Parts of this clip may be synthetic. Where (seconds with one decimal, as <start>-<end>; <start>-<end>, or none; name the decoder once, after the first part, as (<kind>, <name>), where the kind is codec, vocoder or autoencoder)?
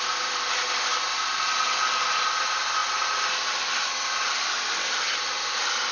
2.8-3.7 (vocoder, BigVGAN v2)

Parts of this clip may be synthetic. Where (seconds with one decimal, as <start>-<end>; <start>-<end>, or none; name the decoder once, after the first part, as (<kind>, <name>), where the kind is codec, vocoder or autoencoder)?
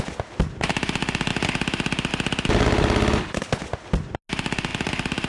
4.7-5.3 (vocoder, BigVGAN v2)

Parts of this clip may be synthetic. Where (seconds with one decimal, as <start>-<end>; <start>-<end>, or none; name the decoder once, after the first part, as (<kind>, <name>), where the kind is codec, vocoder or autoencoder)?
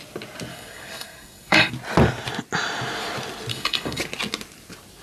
0.5-1.7 (codec, DAC); 3.5-4.0